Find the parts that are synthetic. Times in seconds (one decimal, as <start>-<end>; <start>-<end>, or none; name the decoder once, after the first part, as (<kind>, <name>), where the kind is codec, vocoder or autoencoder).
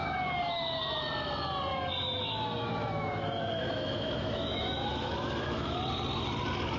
0.0-0.8 (autoencoder, DAC-VAE); 1.7-5.8